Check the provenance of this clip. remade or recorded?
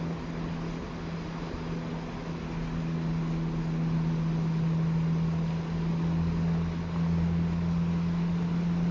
recorded